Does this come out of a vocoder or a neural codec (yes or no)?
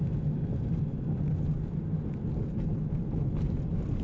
no